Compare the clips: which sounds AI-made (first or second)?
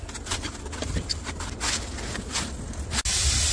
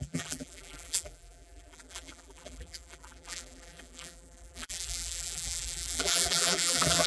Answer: second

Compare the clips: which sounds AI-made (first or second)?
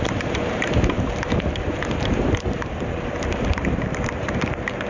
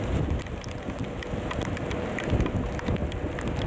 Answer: first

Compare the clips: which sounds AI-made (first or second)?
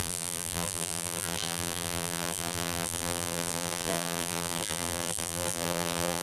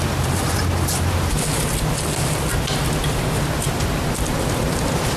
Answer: first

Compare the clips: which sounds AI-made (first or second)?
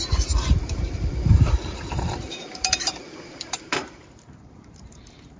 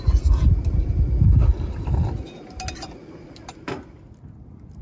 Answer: first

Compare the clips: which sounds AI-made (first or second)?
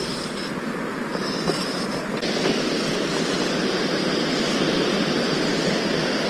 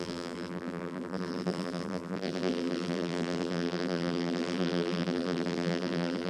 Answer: second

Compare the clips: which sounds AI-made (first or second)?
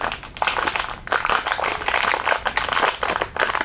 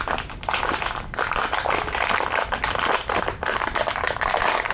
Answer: second